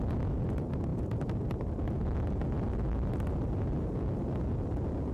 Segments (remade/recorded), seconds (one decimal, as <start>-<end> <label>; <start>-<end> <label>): 0.0-5.1 recorded